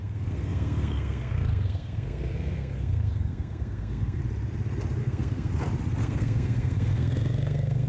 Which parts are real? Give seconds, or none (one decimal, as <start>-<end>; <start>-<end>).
4.2-5.0; 5.5-6.0